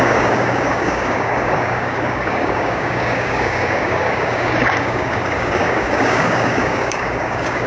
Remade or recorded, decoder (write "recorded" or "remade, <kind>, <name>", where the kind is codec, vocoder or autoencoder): remade, codec, DAC